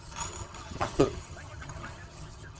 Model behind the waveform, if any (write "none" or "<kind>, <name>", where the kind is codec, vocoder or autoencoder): vocoder, HiFi-GAN